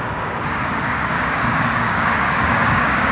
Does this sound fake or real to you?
fake